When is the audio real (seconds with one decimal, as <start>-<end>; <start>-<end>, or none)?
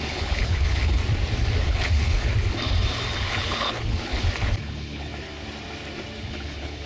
1.0-1.6; 2.3-3.2; 4.1-4.6; 5.1-6.2